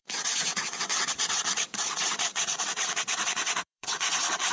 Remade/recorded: remade